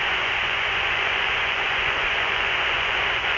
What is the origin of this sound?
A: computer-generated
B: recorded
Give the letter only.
A